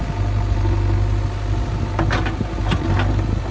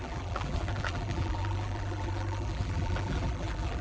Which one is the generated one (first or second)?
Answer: second